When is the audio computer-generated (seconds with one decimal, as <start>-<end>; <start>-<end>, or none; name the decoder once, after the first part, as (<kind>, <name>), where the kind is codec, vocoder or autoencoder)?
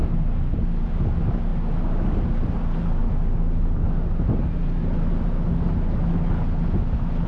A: none